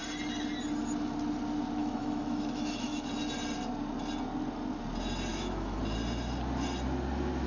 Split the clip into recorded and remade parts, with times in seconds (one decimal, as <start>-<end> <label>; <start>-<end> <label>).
0.0-1.8 recorded; 1.8-3.1 remade; 3.1-5.3 recorded; 5.3-5.8 remade; 5.8-7.5 recorded